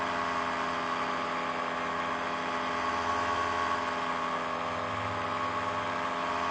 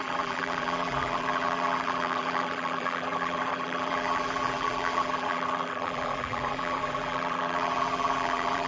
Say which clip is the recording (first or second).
first